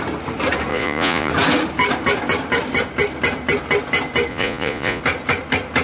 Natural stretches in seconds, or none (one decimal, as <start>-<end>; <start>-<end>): 0.0-0.7; 1.3-4.3; 5.0-5.8